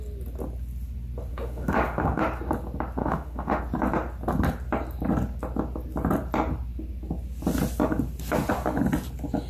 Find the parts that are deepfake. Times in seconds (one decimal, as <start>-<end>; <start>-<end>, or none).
1.3-2.2; 3.0-3.6